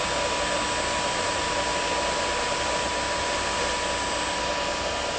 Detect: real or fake real